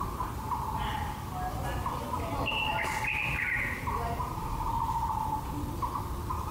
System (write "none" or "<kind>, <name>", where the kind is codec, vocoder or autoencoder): none